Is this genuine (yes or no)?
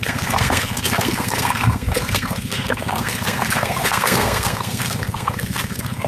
no